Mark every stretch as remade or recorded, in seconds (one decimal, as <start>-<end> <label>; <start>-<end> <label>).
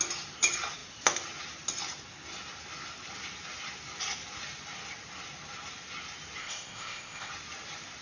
0.0-6.4 recorded; 6.4-7.3 remade; 7.3-8.0 recorded